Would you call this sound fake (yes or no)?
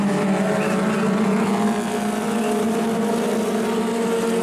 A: no